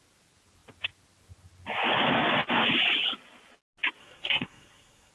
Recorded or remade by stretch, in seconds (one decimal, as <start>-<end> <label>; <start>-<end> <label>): 0.0-4.0 recorded; 4.0-5.1 remade